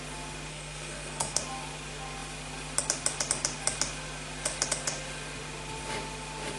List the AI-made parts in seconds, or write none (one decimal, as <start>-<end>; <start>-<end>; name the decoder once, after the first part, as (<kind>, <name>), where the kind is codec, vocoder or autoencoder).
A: 0.5-1.4 (codec, SNAC)